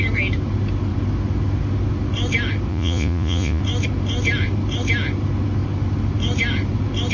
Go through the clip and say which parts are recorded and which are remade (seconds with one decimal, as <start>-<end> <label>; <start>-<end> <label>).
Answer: 0.0-2.7 recorded; 2.7-3.6 remade; 3.6-7.1 recorded